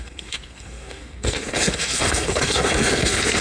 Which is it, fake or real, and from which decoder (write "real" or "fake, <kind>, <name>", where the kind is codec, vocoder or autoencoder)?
fake, codec, SNAC